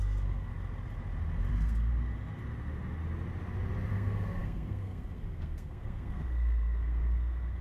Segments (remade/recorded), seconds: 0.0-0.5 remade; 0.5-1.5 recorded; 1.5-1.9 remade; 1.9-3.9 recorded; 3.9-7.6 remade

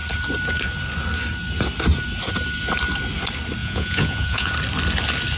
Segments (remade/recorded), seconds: 0.0-3.6 recorded; 3.6-4.5 remade; 4.5-5.4 recorded